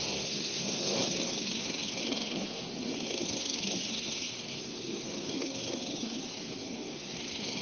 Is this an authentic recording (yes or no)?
no